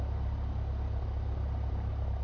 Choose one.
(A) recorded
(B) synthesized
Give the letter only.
A